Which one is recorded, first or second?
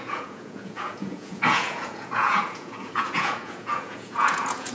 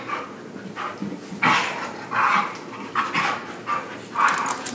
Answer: second